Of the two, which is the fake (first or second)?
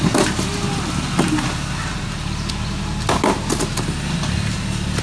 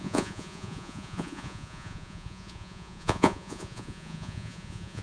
second